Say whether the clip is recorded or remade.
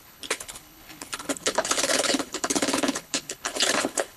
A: remade